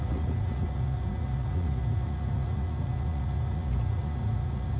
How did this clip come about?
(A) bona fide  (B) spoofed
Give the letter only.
B